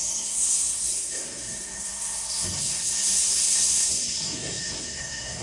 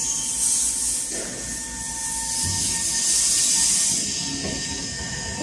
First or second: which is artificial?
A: first